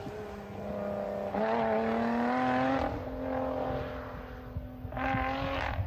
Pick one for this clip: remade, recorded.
recorded